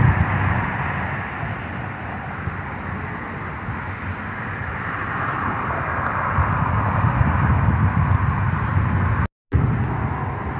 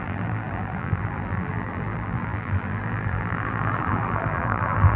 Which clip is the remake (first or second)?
second